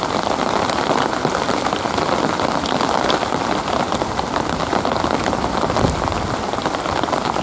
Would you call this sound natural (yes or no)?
yes